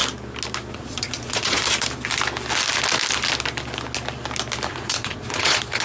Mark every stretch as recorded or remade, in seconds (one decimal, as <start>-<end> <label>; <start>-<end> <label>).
0.0-0.7 recorded; 0.7-1.6 remade; 1.6-4.7 recorded; 4.7-5.8 remade